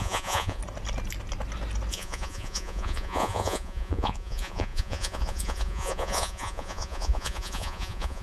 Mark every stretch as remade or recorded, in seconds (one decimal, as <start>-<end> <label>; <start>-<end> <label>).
0.0-0.6 remade; 0.6-1.9 recorded; 1.9-8.2 remade